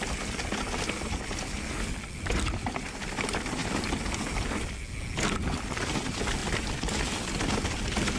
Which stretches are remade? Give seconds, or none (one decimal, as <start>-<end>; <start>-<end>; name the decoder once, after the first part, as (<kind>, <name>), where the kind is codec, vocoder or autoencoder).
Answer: none